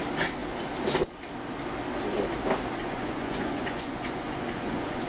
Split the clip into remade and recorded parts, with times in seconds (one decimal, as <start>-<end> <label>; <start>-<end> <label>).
0.0-2.8 recorded; 2.8-5.1 remade